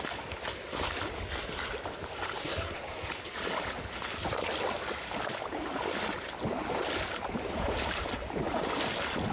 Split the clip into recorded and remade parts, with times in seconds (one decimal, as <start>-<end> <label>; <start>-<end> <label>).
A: 0.0-2.4 recorded; 2.4-3.1 remade; 3.1-9.3 recorded